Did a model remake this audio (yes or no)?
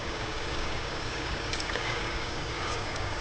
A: yes